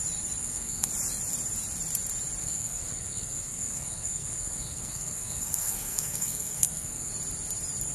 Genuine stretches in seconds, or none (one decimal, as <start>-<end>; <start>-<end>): 0.0-0.4; 0.9-2.4; 7.1-7.9

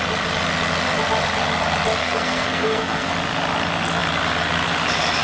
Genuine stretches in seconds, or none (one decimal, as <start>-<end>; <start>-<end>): 0.0-2.0; 3.1-5.2